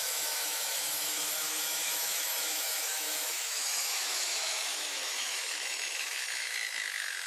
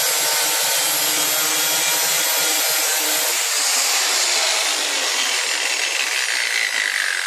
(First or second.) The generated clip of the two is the first